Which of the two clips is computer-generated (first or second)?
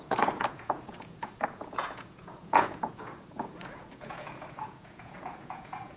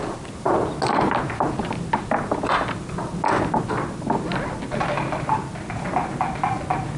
first